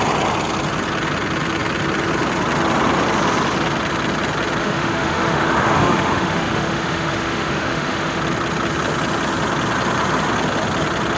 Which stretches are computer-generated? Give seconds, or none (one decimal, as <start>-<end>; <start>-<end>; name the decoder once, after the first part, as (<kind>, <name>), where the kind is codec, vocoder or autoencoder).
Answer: 4.6-8.2 (autoencoder, DAC-VAE)

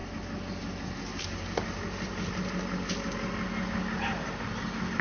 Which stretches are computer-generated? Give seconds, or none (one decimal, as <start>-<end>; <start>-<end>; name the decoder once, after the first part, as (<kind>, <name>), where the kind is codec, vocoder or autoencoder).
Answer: none

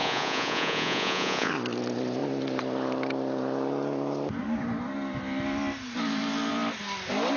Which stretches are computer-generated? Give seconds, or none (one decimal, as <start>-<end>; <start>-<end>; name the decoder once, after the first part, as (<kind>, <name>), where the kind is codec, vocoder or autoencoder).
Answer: 0.0-1.5 (vocoder, Vocos)

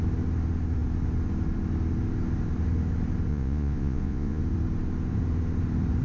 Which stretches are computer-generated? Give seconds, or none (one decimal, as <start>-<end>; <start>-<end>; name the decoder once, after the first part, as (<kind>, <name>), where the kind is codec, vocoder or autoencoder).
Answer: 3.3-4.4 (vocoder, Vocos)

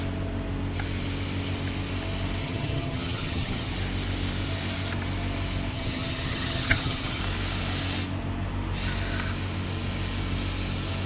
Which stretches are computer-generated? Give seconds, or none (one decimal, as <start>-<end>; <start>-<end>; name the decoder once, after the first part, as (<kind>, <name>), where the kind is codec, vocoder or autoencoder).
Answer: 2.4-3.7 (vocoder, HiFi-GAN); 5.7-7.2